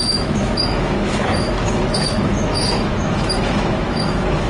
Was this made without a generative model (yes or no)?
no